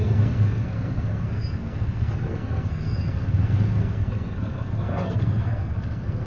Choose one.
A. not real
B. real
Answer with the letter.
A